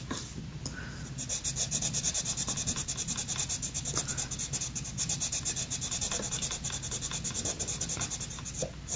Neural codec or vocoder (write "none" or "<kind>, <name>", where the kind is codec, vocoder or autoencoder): none